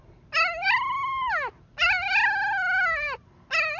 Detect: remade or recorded recorded